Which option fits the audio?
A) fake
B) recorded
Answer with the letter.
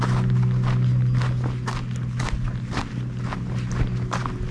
B